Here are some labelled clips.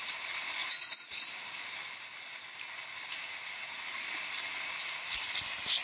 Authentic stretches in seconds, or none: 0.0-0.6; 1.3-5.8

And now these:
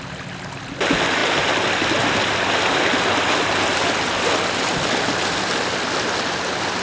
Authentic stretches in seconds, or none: 0.0-6.8

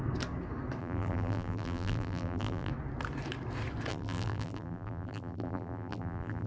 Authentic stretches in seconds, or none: 0.0-0.8; 2.7-3.9